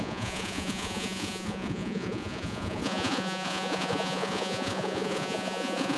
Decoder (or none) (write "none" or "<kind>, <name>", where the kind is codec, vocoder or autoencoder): vocoder, Vocos